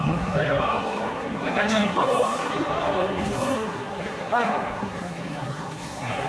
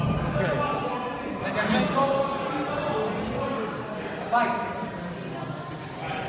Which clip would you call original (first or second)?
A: second